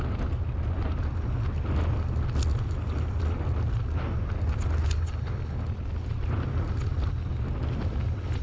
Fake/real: real